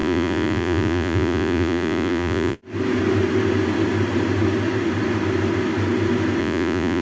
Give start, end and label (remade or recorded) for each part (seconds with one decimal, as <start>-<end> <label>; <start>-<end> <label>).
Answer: 0.0-2.6 remade; 2.6-6.4 recorded; 6.4-7.0 remade